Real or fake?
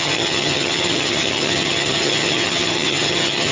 fake